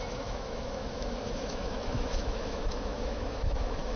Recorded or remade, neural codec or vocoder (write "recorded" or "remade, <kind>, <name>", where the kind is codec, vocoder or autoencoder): remade, autoencoder, DAC-VAE